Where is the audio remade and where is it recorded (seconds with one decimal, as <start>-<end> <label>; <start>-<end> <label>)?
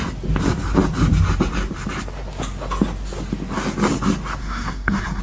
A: 0.0-4.4 recorded; 4.4-5.2 remade